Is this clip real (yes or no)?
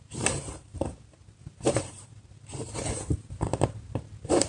no